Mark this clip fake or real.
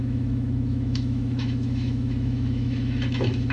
fake